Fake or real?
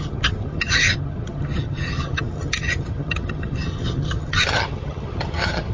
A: fake